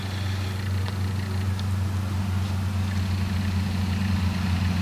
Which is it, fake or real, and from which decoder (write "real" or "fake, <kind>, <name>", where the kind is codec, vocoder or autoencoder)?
real